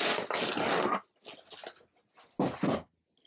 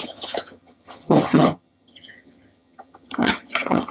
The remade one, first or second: second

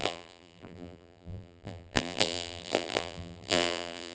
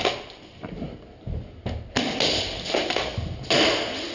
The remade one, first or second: first